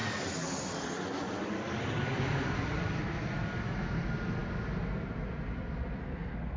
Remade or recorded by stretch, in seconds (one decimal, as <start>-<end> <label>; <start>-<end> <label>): 0.0-6.0 recorded; 6.0-6.6 remade